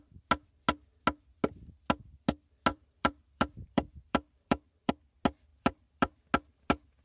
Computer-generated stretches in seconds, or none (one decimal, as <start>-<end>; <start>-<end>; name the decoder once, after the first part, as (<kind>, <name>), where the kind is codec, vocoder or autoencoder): 2.7-4.9 (vocoder, BigVGAN v2); 5.5-6.2